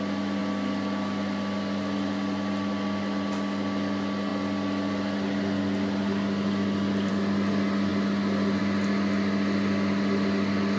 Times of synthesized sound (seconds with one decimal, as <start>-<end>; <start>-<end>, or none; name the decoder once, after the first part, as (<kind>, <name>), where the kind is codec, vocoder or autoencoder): none